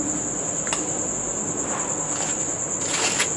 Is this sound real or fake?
real